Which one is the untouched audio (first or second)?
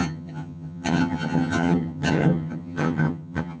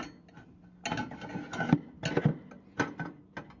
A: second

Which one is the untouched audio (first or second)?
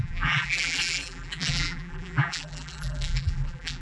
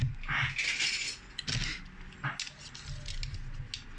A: second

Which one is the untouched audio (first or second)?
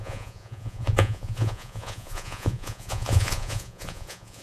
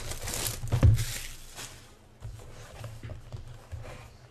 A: second